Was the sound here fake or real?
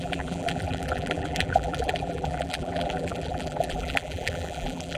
fake